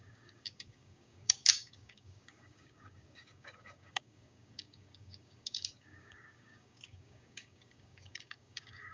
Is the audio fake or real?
fake